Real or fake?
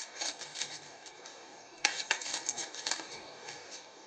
fake